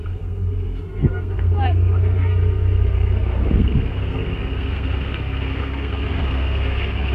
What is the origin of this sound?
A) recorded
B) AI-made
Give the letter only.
B